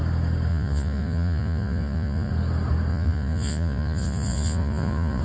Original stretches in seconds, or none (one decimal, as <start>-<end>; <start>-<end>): 0.0-0.5; 2.3-2.9